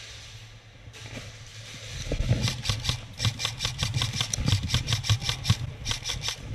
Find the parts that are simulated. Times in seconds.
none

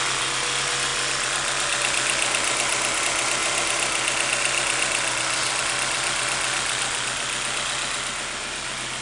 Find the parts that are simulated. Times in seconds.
none

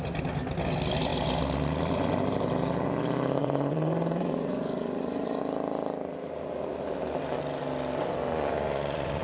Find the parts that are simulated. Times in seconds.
3.4-5.4; 8.3-9.2

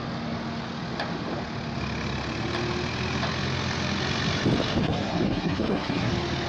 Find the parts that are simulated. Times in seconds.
4.8-6.1

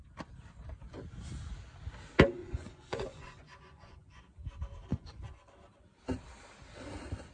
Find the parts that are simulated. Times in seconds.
2.4-4.2; 4.9-5.5